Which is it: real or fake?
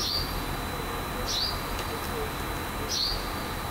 real